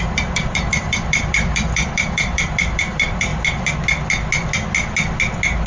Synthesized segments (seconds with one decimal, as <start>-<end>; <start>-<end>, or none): 0.0-3.3